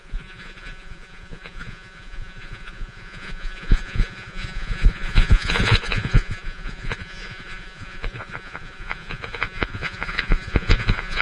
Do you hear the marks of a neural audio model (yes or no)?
yes